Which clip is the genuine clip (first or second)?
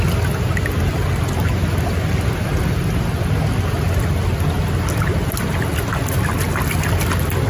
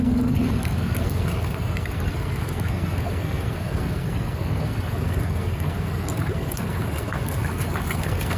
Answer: first